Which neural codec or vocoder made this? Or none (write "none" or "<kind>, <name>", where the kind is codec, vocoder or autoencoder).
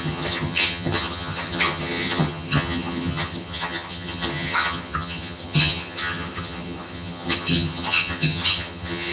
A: vocoder, HiFi-GAN